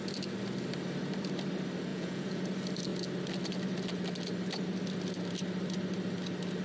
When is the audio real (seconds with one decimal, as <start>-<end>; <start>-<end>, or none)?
0.0-1.9; 2.4-6.6